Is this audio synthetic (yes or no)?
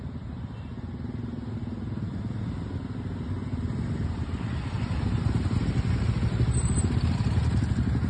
no